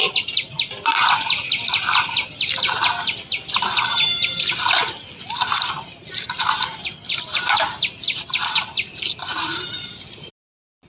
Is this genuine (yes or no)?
yes